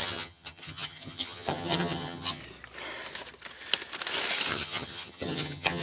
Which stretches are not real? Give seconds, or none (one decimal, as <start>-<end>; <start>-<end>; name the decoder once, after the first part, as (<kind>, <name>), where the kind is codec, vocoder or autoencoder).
0.0-2.4 (vocoder, HiFi-GAN); 4.5-5.8